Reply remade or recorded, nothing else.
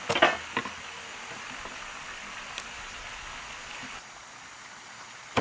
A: recorded